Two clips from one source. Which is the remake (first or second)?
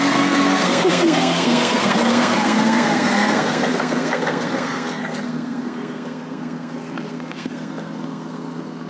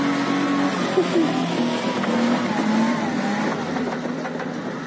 first